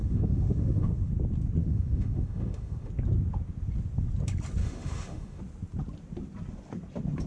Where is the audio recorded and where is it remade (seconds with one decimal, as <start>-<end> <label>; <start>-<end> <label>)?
0.0-1.1 remade; 1.1-1.6 recorded; 1.6-2.9 remade; 2.9-4.6 recorded; 4.6-5.4 remade; 5.4-7.3 recorded